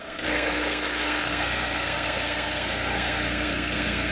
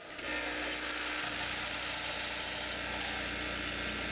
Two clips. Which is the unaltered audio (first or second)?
second